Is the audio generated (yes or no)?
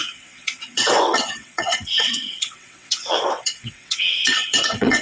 yes